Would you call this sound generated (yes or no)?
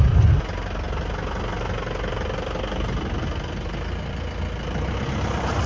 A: no